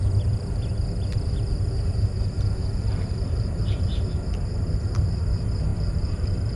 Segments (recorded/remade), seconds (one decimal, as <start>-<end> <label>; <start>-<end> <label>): 0.0-2.6 recorded; 2.6-4.0 remade; 4.0-5.7 recorded; 5.7-6.6 remade